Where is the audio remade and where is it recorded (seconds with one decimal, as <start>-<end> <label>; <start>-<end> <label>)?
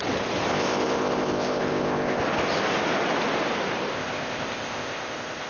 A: 0.0-0.5 recorded; 0.5-2.2 remade; 2.2-3.9 recorded; 3.9-5.5 remade